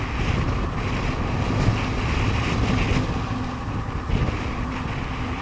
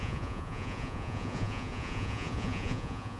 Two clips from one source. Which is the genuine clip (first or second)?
first